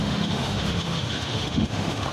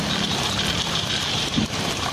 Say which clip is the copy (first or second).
first